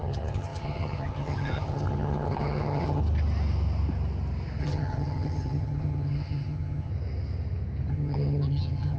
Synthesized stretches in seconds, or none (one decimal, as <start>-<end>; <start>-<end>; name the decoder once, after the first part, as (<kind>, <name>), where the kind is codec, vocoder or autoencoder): 0.0-3.0 (vocoder, HiFi-GAN); 4.6-6.9; 7.9-9.0

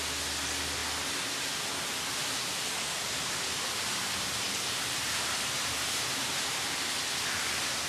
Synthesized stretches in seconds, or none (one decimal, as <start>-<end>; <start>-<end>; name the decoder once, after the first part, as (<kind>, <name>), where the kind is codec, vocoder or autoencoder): 2.2-6.9 (vocoder, BigVGAN v2)

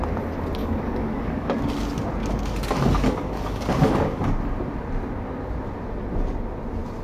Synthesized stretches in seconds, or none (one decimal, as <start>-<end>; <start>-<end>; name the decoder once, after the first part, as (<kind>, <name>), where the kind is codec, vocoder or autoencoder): 0.6-1.6 (codec, DAC); 2.2-4.3

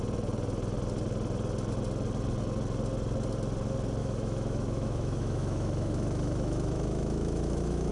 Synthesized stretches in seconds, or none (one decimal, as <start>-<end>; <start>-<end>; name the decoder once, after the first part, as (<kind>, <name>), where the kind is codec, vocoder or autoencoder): 4.0-7.9 (autoencoder, DAC-VAE)

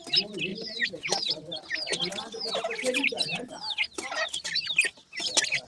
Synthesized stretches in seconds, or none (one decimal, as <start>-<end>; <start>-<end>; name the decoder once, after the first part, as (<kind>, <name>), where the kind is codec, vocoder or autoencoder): none